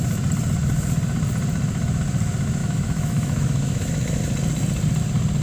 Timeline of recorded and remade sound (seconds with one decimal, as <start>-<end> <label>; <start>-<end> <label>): 0.0-2.6 recorded; 2.6-4.2 remade; 4.2-5.4 recorded